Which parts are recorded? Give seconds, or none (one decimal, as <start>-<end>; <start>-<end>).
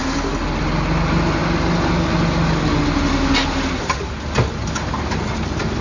0.0-5.8